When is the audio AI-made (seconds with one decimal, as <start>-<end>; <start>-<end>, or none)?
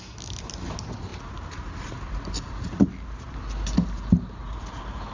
none